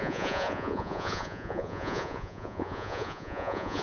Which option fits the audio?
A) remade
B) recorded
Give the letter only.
A